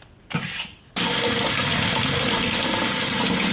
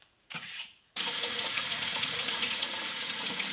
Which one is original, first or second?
first